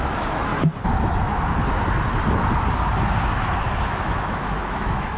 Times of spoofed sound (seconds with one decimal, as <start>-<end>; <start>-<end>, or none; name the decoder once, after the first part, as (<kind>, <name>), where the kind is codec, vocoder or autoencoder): 0.0-0.5 (autoencoder, DAC-VAE); 3.6-5.2

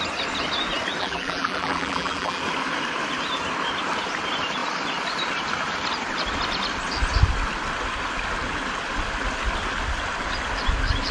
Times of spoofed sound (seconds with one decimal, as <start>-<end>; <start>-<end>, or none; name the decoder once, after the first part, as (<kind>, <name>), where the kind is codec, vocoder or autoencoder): 1.0-2.4 (vocoder, BigVGAN v2)